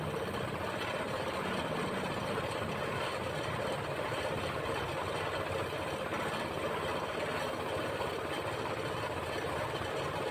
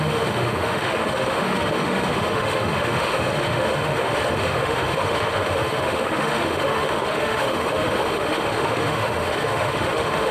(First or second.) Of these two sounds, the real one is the first